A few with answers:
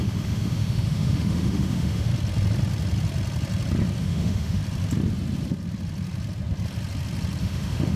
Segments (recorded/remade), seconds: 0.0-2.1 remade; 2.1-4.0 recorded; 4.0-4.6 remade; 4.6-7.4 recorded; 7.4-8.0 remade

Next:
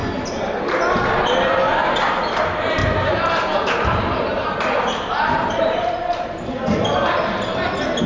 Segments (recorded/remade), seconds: 0.0-1.7 recorded; 1.7-2.4 remade; 2.4-2.8 recorded; 2.8-5.6 remade; 5.6-8.1 recorded